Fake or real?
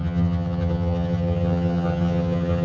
fake